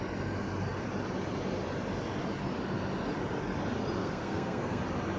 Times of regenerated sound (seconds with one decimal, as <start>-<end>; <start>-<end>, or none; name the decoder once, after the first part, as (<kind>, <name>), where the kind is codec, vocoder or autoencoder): 4.0-4.8 (codec, SNAC)